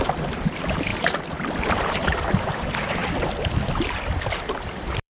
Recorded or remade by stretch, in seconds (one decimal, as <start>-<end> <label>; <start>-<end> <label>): 0.0-0.9 remade; 0.9-1.9 recorded; 1.9-5.2 remade